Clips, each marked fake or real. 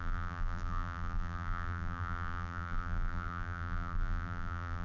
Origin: fake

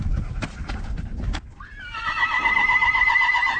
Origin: real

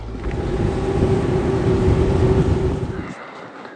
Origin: real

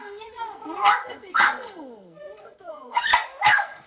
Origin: fake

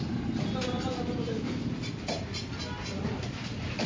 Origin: real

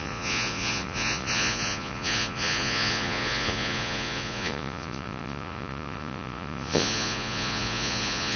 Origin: fake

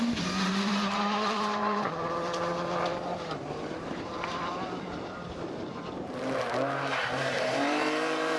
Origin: fake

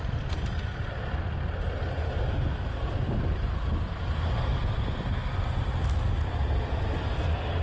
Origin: real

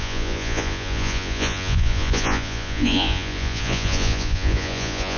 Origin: fake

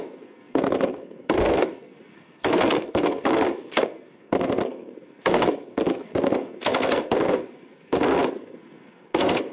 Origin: fake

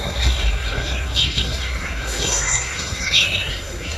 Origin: fake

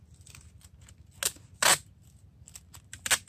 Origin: real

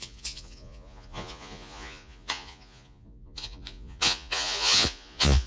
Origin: fake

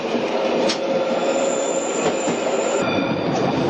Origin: real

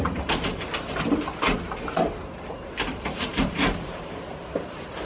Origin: real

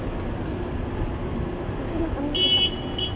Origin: real